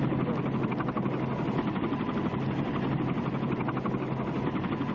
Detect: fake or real real